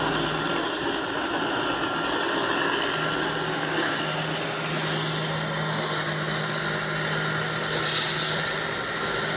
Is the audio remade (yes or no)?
no